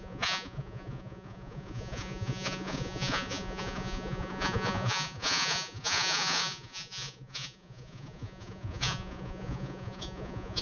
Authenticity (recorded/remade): remade